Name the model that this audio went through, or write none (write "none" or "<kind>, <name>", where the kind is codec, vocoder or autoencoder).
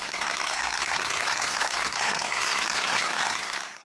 codec, SNAC